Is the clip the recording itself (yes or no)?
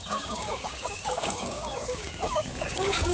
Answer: no